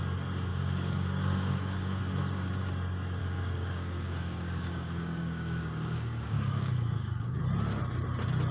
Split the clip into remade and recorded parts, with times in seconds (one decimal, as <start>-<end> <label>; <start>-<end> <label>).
0.0-0.5 recorded; 0.5-2.0 remade; 2.0-3.2 recorded; 3.2-7.4 remade; 7.4-8.5 recorded